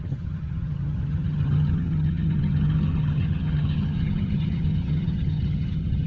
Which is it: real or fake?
fake